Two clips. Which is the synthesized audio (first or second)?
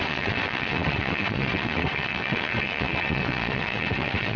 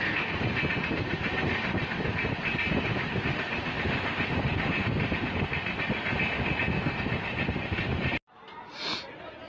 first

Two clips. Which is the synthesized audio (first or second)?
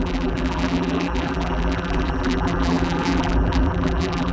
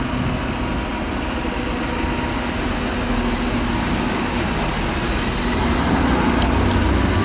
first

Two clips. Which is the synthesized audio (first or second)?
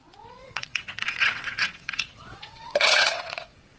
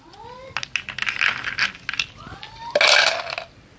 first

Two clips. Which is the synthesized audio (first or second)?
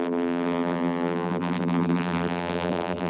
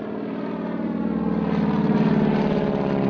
first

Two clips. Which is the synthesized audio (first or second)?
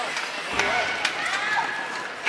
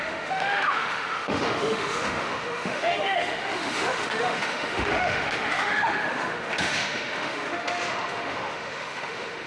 second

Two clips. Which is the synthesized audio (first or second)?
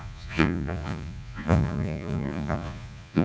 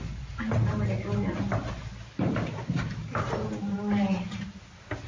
first